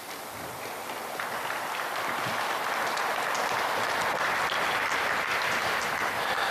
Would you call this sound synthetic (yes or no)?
yes